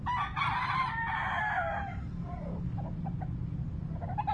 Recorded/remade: recorded